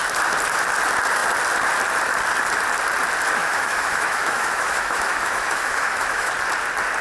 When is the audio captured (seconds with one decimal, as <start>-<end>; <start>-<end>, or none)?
0.0-3.4; 6.3-7.0